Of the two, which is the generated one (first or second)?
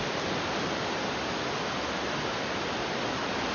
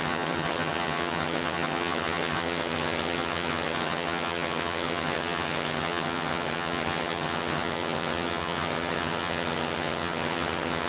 second